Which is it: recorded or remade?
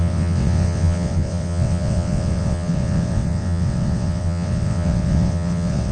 remade